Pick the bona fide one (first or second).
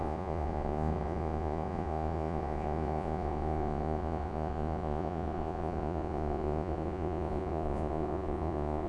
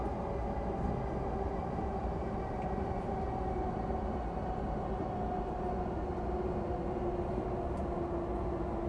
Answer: second